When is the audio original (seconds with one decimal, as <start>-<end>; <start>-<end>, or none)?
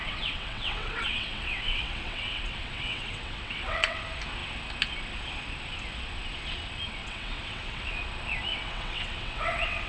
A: 4.0-7.0; 8.1-8.5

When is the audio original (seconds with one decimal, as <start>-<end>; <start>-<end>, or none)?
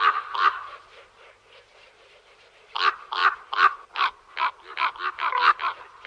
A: 0.0-6.1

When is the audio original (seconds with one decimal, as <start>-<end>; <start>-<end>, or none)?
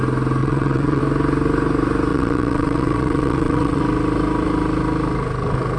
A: 0.0-0.4; 1.0-2.1; 3.8-5.8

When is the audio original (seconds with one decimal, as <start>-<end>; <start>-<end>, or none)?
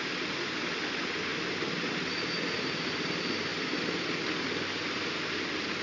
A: 0.0-5.8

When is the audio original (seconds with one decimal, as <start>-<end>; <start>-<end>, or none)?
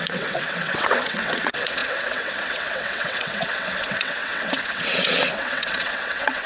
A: none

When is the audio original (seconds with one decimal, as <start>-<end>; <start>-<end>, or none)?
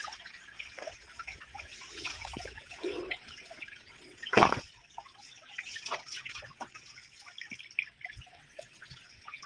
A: 7.0-8.1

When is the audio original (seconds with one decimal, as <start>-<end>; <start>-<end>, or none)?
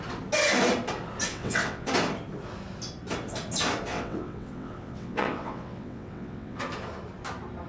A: 0.0-1.3; 1.9-3.9; 6.6-7.7